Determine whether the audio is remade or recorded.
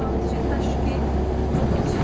recorded